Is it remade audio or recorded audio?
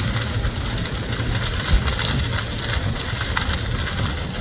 recorded